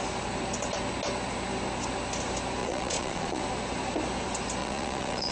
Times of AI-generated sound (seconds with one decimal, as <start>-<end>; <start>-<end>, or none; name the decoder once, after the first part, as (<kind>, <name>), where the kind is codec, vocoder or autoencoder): 2.6-3.4 (vocoder, Vocos); 4.6-5.3